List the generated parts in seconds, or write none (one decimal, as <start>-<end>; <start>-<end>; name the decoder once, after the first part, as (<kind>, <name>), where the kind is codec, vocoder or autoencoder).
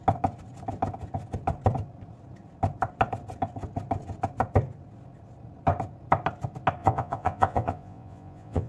6.8-8.7 (vocoder, Vocos)